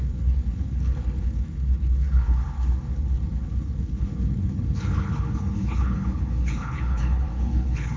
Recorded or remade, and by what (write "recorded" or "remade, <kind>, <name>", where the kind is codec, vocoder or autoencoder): remade, codec, HILCodec